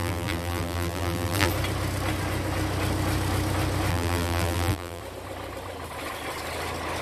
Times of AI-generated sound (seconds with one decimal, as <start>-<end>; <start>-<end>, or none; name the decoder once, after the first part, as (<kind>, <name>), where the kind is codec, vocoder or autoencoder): 0.0-1.5 (vocoder, BigVGAN v2); 3.9-5.0